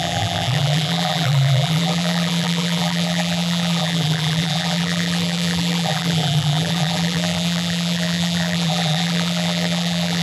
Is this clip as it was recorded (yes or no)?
no